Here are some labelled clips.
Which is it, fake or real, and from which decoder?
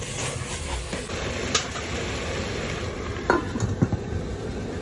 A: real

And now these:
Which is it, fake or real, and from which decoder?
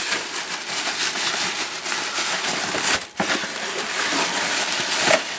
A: real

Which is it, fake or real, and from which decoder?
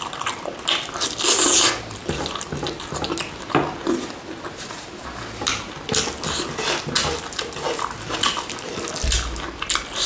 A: real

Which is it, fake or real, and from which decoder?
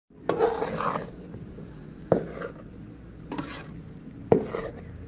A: real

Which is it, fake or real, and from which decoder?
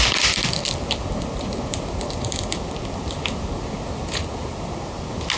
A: real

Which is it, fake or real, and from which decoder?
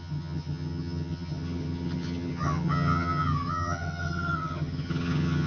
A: fake, vocoder, HiFi-GAN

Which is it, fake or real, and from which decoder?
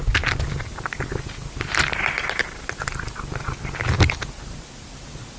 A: real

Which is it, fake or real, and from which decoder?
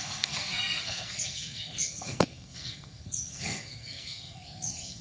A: fake, codec, SNAC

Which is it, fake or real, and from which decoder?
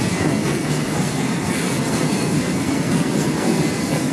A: fake, codec, SNAC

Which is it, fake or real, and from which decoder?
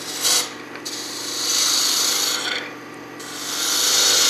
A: fake, vocoder, BigVGAN v2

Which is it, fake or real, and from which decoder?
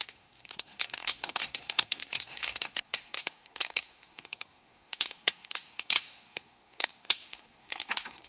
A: fake, codec, SNAC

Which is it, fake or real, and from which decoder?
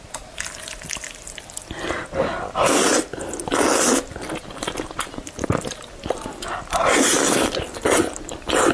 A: real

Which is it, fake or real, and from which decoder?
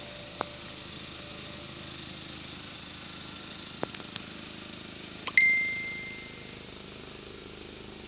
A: real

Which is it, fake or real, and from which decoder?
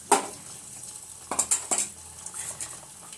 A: real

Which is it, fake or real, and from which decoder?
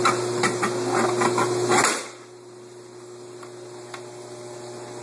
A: real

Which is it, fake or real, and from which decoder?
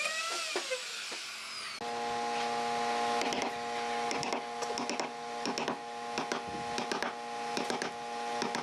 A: real